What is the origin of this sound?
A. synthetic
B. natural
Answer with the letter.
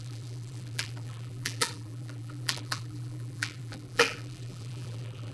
A